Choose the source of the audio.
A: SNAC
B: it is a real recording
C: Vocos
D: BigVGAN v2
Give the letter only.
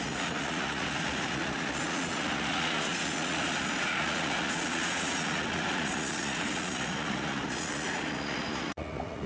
C